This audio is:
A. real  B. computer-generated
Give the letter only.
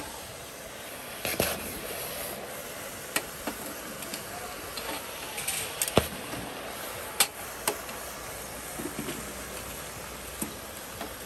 A